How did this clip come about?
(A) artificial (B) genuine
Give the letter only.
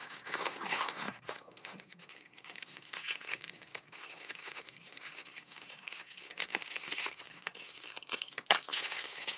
A